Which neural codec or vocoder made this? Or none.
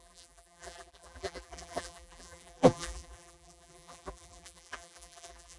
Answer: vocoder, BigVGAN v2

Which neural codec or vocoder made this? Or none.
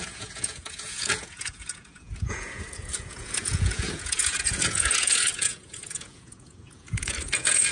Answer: vocoder, Vocos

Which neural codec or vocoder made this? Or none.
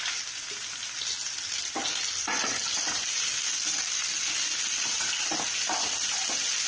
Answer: none